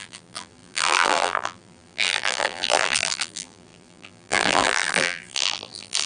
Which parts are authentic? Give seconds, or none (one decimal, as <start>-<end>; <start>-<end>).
none